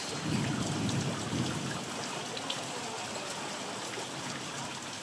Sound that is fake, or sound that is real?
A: real